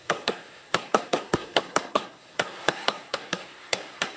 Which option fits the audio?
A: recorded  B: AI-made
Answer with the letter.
B